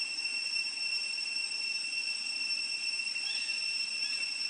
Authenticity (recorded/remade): recorded